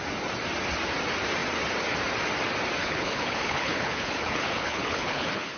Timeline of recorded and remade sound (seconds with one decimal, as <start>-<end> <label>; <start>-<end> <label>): 0.0-2.8 recorded; 2.8-5.6 remade